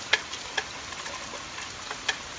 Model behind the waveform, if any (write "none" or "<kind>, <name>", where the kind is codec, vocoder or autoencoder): none